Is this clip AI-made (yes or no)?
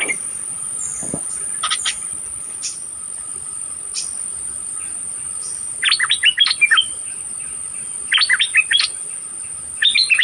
no